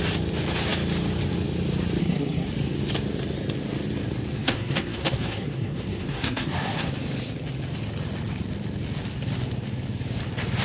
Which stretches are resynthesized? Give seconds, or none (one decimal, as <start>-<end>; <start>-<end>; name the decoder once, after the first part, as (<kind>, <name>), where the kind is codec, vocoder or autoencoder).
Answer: 2.0-2.5 (codec, SNAC); 4.4-6.9